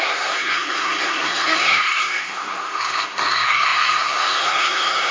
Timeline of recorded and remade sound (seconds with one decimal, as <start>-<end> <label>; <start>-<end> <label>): 0.0-5.1 remade